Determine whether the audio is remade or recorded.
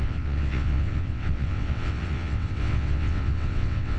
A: remade